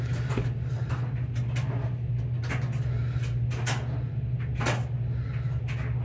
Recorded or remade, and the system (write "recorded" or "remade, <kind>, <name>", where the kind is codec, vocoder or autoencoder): recorded